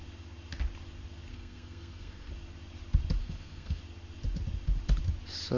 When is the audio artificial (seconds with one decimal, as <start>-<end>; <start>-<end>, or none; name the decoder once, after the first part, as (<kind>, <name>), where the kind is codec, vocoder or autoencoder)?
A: 1.3-2.3 (codec, SNAC); 3.2-3.8